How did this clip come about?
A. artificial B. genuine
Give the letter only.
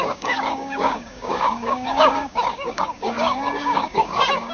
A